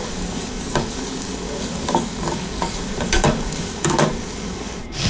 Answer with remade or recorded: remade